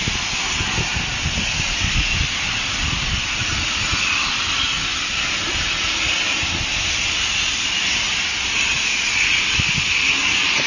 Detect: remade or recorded recorded